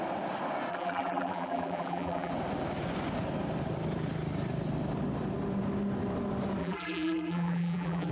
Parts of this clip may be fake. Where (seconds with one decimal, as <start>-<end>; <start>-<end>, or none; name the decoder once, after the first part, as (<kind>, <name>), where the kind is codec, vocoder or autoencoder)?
0.7-2.3 (vocoder, BigVGAN v2); 6.6-8.1